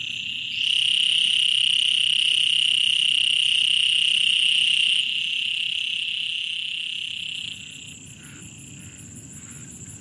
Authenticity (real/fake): real